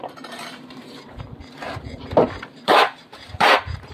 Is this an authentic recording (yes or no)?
no